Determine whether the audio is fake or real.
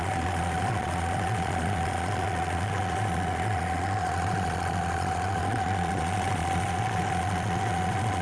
fake